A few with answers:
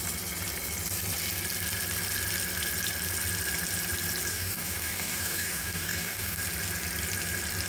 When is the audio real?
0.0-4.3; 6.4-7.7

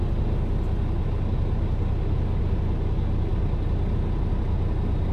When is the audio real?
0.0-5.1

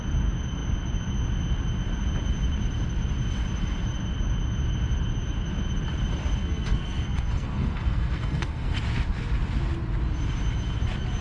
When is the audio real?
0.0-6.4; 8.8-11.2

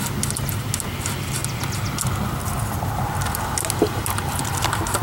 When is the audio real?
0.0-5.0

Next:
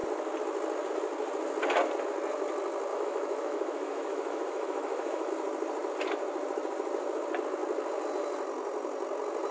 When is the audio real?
0.0-2.9; 5.3-9.5

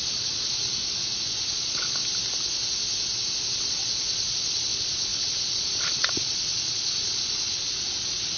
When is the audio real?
0.8-1.4; 2.0-3.5

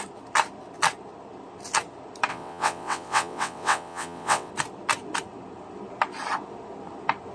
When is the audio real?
0.0-2.3; 4.5-7.3

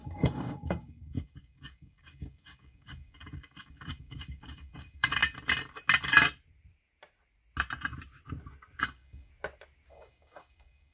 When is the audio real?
5.2-8.8; 9.3-9.9